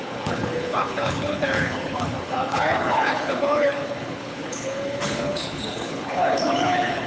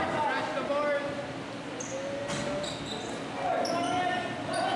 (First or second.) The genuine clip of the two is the second